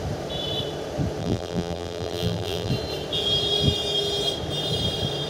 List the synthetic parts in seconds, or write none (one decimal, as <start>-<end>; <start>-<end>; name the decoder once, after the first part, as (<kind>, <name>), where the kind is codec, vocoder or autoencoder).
1.2-2.7 (vocoder, BigVGAN v2)